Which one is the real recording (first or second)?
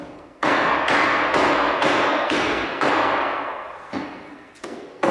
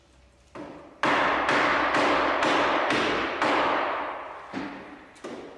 second